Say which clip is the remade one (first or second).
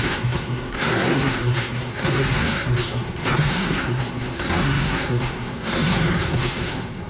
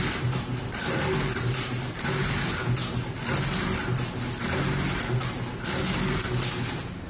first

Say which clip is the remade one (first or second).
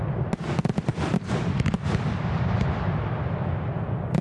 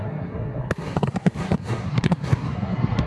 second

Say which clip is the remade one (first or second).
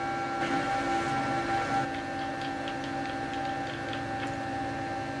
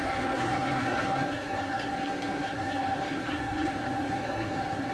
second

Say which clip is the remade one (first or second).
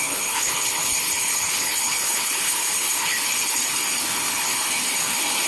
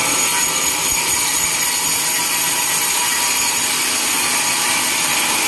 first